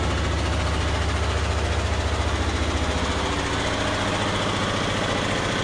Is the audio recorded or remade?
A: recorded